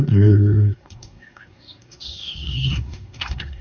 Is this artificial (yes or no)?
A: yes